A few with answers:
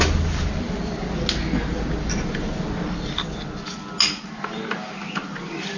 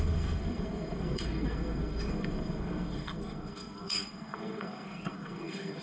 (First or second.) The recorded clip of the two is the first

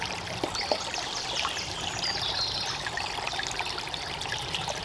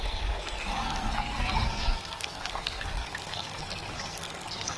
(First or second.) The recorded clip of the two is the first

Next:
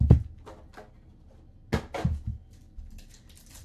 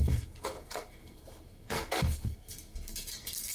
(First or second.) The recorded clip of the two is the first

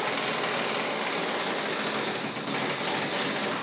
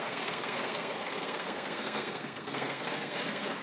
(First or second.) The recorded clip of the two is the first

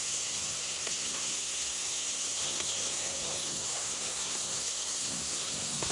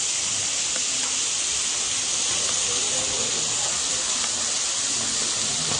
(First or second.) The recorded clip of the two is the second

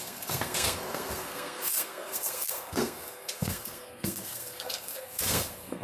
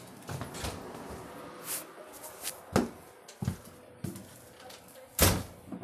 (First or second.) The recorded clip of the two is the second